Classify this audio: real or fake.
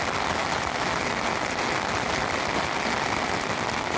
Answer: real